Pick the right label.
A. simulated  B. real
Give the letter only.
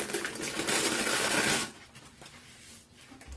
B